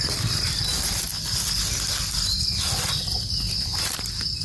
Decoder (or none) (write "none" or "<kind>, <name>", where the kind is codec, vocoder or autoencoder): none